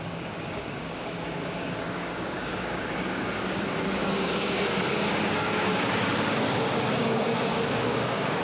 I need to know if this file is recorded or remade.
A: remade